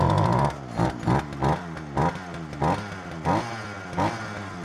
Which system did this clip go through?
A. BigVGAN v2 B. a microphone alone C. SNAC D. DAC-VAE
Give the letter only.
B